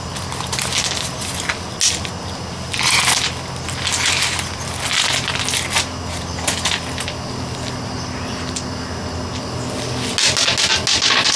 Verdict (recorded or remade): recorded